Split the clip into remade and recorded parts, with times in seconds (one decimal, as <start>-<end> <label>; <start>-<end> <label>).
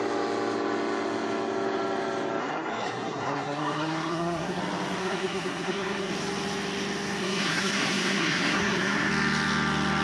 0.0-2.4 recorded; 2.4-4.6 remade; 4.6-5.0 recorded; 5.0-6.1 remade; 6.1-7.2 recorded; 7.2-9.1 remade; 9.1-10.0 recorded